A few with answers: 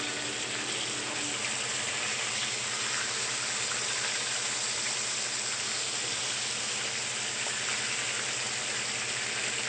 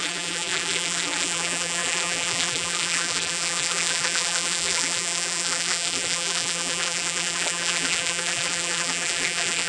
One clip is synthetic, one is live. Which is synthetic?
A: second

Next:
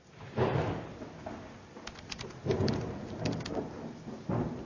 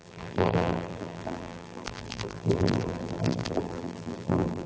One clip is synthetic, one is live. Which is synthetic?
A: second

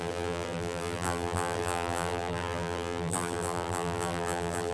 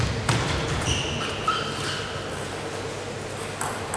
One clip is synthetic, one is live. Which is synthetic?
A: first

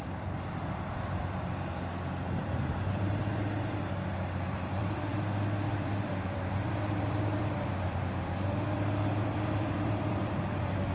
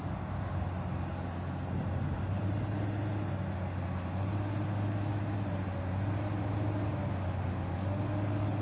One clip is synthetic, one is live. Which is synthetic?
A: first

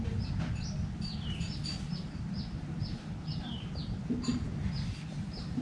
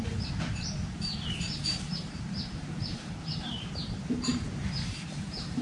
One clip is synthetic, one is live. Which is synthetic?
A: second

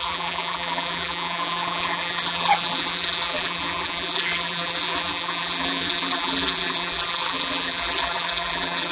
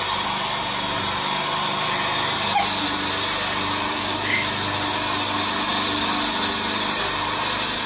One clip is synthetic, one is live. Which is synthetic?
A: first